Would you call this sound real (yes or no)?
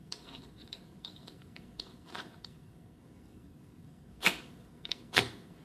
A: no